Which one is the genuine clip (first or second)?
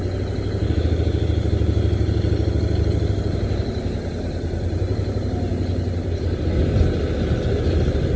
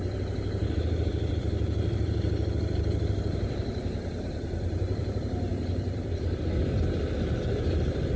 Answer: first